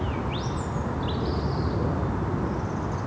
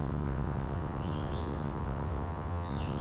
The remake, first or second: second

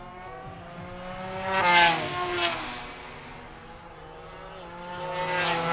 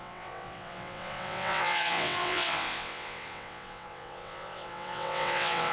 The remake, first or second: second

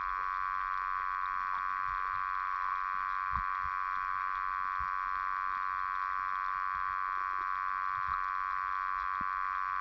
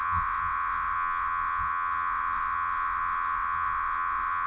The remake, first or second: second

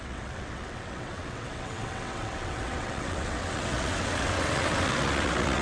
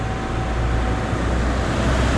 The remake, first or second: first